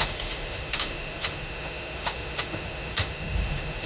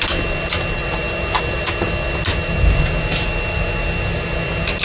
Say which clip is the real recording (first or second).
second